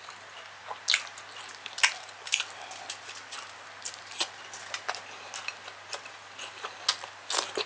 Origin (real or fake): real